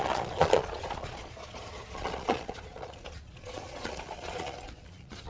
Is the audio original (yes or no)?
no